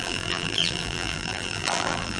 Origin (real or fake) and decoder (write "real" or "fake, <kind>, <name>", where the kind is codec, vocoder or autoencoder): fake, vocoder, BigVGAN v2